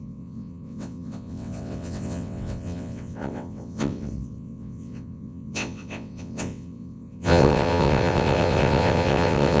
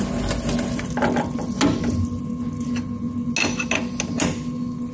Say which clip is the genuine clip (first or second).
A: second